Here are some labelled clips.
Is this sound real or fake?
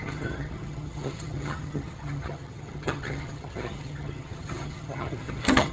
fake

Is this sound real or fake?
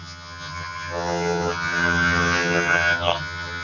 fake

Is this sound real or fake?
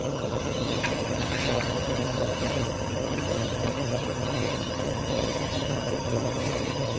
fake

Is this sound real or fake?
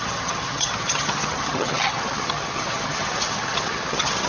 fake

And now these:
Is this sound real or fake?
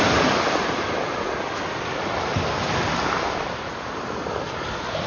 real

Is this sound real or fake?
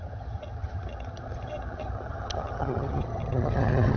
fake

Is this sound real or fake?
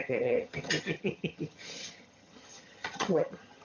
fake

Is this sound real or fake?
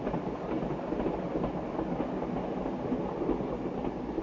real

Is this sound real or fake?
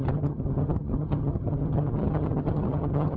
fake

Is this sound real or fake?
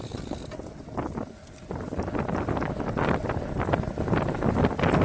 real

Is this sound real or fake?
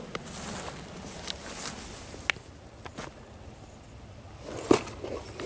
real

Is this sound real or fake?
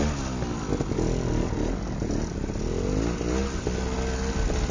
real